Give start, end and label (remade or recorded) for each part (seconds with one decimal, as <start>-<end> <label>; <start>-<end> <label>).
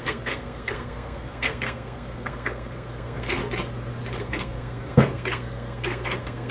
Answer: 0.0-3.4 remade; 3.4-4.2 recorded; 4.2-6.5 remade